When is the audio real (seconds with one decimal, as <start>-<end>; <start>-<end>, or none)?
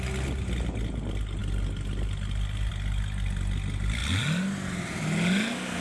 0.0-5.8